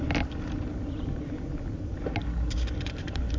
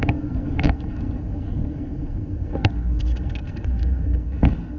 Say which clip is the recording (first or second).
first